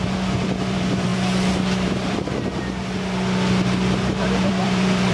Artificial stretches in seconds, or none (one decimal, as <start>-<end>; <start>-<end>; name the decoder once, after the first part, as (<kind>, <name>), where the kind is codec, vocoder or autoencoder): 0.0-1.1 (vocoder, BigVGAN v2); 4.2-5.1